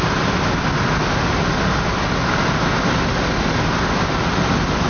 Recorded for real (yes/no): yes